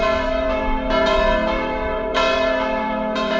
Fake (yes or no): yes